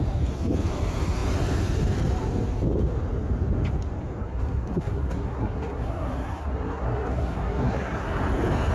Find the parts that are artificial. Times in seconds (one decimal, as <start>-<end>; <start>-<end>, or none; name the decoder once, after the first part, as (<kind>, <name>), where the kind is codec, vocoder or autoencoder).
4.2-8.2 (codec, SNAC)